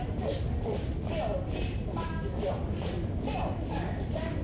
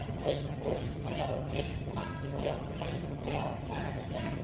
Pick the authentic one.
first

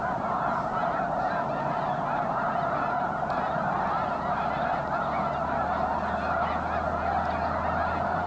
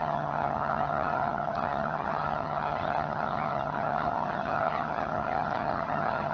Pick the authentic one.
first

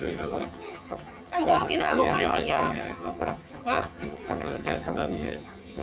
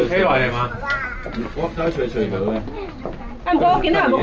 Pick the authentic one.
second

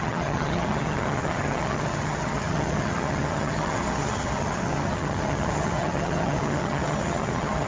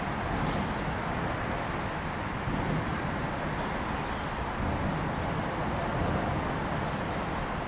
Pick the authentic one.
second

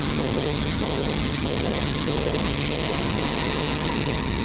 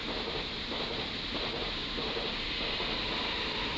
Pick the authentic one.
second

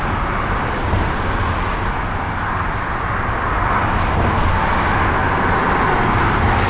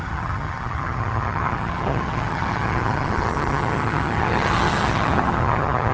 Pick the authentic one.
first